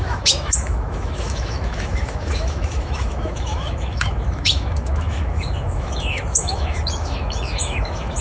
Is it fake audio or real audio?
fake